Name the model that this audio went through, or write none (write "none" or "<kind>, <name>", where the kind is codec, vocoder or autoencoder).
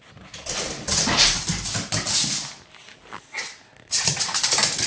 none